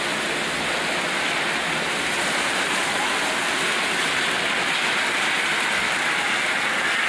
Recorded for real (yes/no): yes